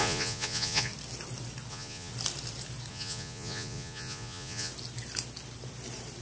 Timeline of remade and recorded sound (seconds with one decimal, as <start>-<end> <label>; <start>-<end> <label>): 0.0-0.9 remade; 0.9-1.7 recorded; 1.7-2.1 remade; 2.1-2.9 recorded; 2.9-4.7 remade; 4.7-6.2 recorded